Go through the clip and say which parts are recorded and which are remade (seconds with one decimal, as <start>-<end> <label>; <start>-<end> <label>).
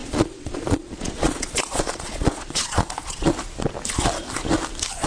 0.0-3.3 remade; 3.3-5.1 recorded